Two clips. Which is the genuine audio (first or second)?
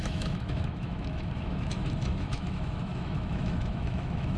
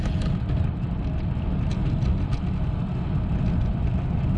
second